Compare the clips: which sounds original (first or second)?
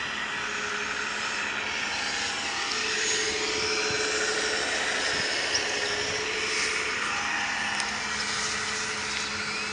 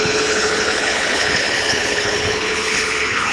first